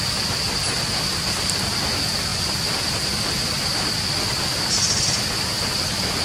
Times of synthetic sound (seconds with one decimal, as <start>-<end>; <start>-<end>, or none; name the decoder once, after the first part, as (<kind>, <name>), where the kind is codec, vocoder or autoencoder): none

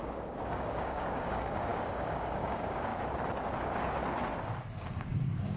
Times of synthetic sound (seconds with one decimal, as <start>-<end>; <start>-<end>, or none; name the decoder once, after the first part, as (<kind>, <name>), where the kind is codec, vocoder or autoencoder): 0.0-2.9 (codec, DAC); 3.6-4.0; 4.8-5.6

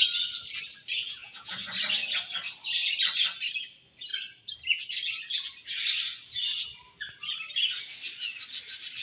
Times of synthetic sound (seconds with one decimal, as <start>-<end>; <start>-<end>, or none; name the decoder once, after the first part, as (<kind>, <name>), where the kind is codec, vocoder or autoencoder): 0.9-1.5 (vocoder, Vocos)

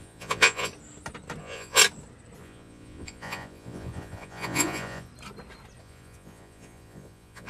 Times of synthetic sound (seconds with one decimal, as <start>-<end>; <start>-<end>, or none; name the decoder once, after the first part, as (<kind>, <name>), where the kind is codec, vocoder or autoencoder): 0.0-0.7 (vocoder, Vocos); 1.4-1.8; 2.4-5.1; 5.8-7.5

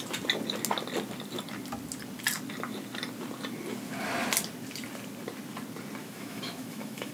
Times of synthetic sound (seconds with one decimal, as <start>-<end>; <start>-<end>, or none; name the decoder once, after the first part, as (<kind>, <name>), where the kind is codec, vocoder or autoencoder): 6.0-7.1 (autoencoder, DAC-VAE)